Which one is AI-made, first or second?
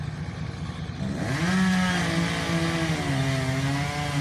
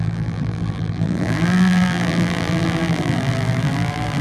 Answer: second